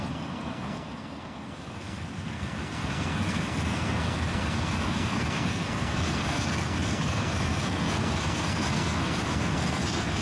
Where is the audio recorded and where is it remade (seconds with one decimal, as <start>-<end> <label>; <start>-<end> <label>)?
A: 0.0-10.2 remade